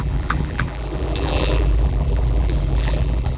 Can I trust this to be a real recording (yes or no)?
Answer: no